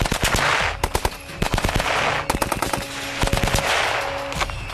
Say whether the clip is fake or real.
real